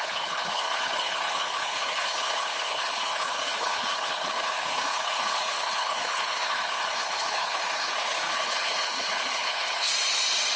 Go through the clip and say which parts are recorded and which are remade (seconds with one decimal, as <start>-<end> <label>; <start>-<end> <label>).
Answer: 0.0-9.9 remade; 9.9-10.6 recorded

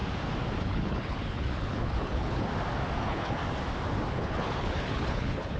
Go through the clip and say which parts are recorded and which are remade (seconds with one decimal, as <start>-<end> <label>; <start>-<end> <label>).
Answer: 0.0-0.6 recorded; 0.6-2.5 remade; 2.5-3.0 recorded; 3.0-3.4 remade; 3.4-4.1 recorded; 4.1-5.6 remade

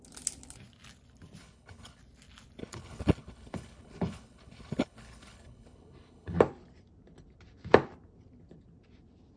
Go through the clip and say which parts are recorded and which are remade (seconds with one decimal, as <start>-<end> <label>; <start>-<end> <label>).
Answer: 0.0-1.4 recorded; 1.4-2.0 remade; 2.0-2.6 recorded; 2.6-6.4 remade; 6.4-9.4 recorded

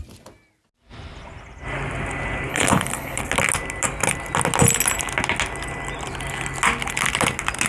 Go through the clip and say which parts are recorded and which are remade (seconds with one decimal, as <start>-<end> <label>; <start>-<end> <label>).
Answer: 0.0-2.5 recorded; 2.5-3.2 remade; 3.2-7.7 recorded